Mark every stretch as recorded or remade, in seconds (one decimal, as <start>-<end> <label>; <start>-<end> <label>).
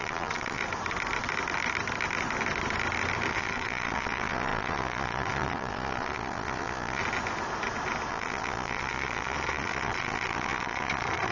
0.0-0.6 remade; 0.6-3.3 recorded; 3.3-7.0 remade; 7.0-8.1 recorded; 8.1-11.3 remade